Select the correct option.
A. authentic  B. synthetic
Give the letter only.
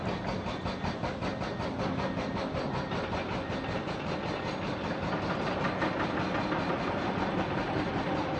A